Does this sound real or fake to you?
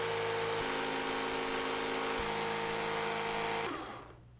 real